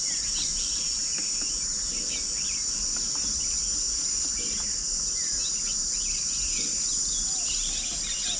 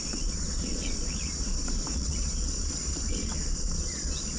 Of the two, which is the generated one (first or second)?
second